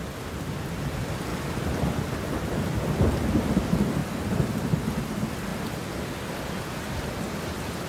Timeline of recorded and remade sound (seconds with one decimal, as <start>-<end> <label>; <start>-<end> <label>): 0.0-7.9 recorded